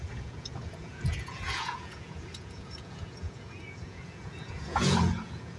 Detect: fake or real fake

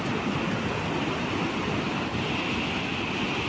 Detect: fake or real real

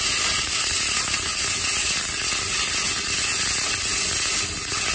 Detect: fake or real real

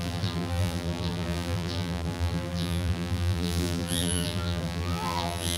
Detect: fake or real fake